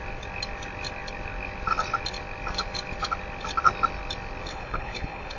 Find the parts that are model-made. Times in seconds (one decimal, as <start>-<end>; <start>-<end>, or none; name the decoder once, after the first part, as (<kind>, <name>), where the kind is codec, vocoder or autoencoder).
4.5-5.4 (codec, HILCodec)